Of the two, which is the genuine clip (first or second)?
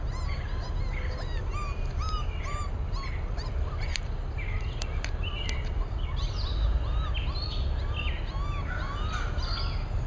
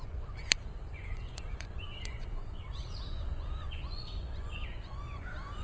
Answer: first